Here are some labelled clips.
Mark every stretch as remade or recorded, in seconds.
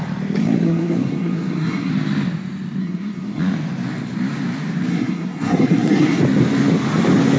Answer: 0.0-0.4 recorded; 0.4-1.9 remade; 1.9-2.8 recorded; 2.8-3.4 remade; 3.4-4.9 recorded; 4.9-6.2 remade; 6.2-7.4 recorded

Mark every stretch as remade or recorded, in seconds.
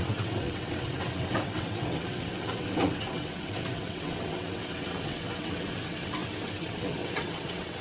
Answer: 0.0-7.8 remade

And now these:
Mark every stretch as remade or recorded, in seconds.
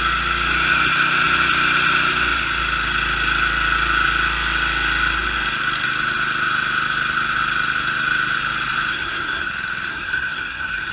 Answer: 0.0-8.9 recorded; 8.9-9.5 remade; 9.5-9.9 recorded; 9.9-10.9 remade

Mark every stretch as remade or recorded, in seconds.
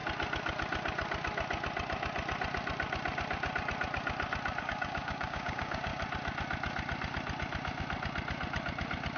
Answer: 0.0-4.6 recorded; 4.6-5.9 remade; 5.9-9.2 recorded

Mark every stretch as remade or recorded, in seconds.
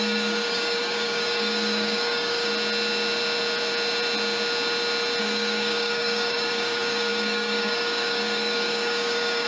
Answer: 0.0-2.5 remade; 2.5-5.2 recorded; 5.2-9.5 remade